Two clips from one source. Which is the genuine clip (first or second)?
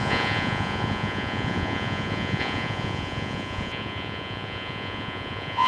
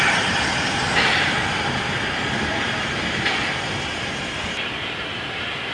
second